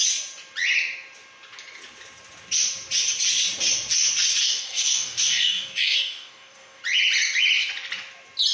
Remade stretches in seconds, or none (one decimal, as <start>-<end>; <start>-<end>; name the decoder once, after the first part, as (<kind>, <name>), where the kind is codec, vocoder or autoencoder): 4.4-6.8 (codec, DAC)